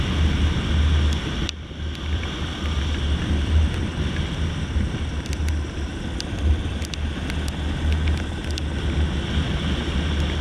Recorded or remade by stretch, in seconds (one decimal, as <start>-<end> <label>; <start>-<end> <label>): 0.0-1.4 recorded; 1.4-5.3 remade; 5.3-10.4 recorded